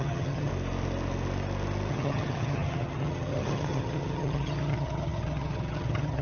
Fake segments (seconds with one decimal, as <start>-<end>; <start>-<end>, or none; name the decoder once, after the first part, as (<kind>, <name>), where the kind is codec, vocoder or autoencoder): 0.0-0.5 (vocoder, HiFi-GAN); 1.9-6.2